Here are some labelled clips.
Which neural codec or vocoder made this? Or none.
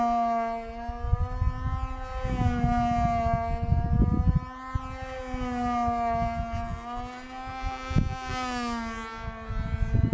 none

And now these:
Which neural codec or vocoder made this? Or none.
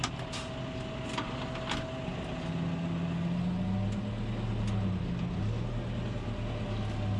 none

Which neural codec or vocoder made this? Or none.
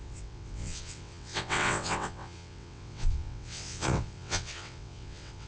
vocoder, WaveNeXt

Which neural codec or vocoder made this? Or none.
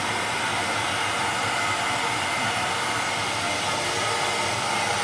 none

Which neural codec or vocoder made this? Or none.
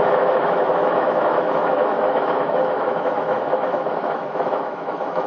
autoencoder, DAC-VAE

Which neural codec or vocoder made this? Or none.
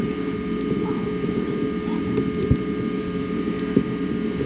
none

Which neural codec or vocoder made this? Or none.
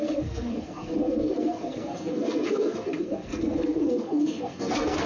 codec, SNAC